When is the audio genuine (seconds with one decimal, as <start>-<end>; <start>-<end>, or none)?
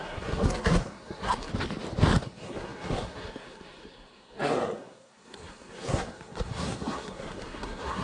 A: 1.5-2.2